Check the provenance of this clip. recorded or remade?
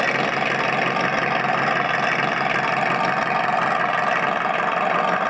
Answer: recorded